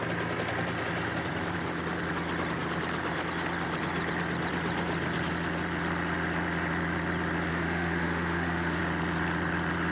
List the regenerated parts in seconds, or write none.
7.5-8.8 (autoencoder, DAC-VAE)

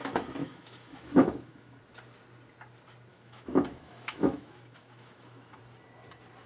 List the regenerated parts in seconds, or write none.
0.4-1.8 (autoencoder, DAC-VAE); 3.1-5.6

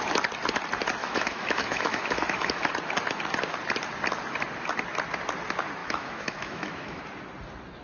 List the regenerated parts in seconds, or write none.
1.0-2.7 (autoencoder, DAC-VAE); 5.8-7.0

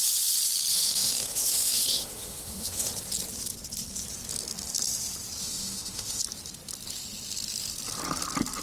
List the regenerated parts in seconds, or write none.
0.7-2.9 (autoencoder, DAC-VAE); 5.4-6.2

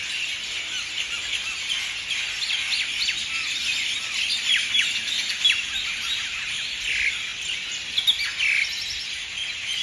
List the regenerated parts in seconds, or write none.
none